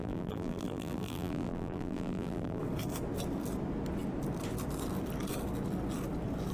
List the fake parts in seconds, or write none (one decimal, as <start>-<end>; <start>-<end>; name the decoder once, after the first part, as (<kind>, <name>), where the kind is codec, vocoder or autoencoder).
0.0-2.6 (vocoder, BigVGAN v2)